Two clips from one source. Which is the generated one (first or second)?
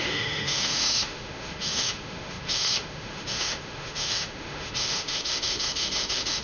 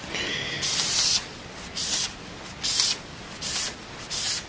first